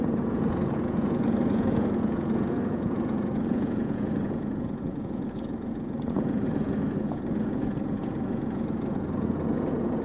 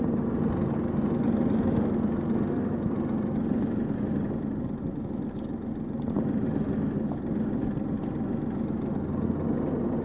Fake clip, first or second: first